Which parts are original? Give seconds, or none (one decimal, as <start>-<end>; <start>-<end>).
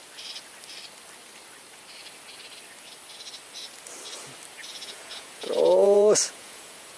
0.0-4.7